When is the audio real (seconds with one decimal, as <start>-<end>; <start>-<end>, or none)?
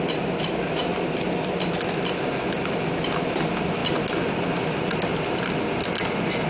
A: 0.0-6.5